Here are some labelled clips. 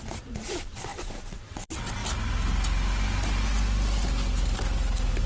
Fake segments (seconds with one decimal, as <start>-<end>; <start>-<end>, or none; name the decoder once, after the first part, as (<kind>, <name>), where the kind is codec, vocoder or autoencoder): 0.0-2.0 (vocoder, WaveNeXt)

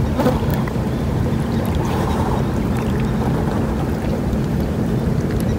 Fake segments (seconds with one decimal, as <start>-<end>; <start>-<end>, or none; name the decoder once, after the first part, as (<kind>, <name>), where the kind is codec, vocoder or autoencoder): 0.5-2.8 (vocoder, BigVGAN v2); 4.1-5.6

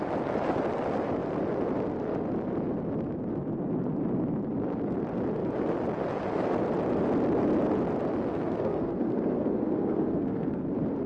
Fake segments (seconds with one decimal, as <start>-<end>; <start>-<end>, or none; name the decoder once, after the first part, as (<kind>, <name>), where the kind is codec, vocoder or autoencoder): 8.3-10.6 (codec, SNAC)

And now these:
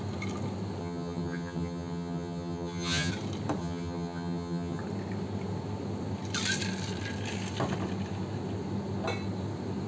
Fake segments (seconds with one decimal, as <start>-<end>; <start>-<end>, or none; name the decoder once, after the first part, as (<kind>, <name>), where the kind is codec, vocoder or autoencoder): 0.8-3.1 (vocoder, HiFi-GAN); 3.6-4.8

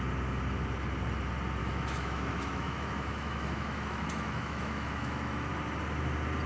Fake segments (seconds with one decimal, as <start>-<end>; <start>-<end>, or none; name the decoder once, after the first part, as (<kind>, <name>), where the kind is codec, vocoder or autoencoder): 1.6-5.5 (autoencoder, DAC-VAE)

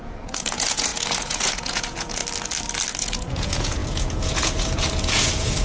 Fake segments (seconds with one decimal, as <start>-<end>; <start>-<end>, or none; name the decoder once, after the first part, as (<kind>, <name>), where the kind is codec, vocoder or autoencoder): 0.0-2.2 (vocoder, Vocos); 3.0-5.6